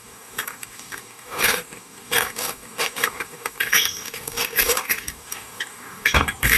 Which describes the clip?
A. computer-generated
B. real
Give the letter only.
A